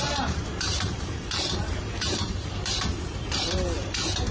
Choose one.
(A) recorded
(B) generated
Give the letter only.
B